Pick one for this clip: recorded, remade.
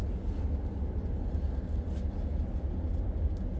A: recorded